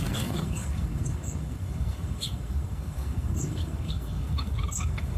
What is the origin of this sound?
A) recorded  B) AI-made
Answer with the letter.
B